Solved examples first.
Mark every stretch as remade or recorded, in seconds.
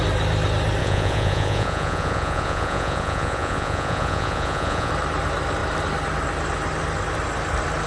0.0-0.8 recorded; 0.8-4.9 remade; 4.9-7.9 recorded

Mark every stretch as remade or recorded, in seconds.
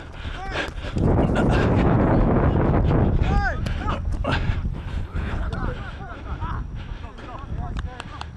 0.0-4.7 recorded; 4.7-5.5 remade; 5.5-8.4 recorded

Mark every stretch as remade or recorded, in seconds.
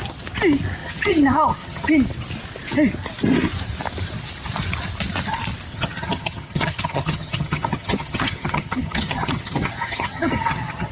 0.0-0.8 recorded; 0.8-1.9 remade; 1.9-5.7 recorded; 5.7-10.9 remade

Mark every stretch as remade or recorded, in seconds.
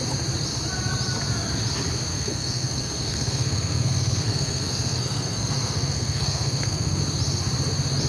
0.0-2.1 recorded; 2.1-7.0 remade; 7.0-8.1 recorded